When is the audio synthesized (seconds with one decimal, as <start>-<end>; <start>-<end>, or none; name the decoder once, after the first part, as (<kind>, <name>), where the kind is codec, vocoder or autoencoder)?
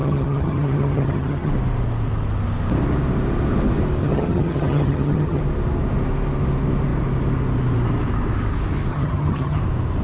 0.0-1.5 (vocoder, HiFi-GAN); 4.0-5.4; 8.9-9.6